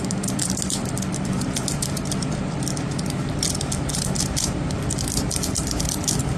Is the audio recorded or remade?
remade